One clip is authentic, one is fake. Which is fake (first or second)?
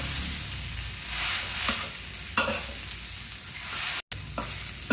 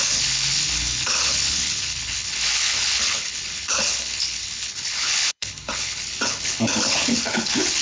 second